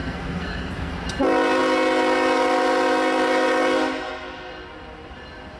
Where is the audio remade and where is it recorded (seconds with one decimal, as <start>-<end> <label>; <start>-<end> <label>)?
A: 0.0-0.9 remade; 0.9-5.6 recorded